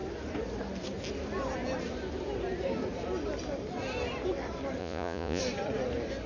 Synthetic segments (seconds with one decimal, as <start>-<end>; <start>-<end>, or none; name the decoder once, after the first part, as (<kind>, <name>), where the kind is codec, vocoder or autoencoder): 4.8-5.4 (vocoder, Vocos)